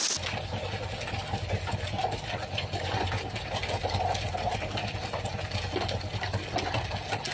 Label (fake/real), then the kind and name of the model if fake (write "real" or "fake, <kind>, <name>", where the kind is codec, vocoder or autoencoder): real